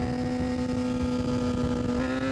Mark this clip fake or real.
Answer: real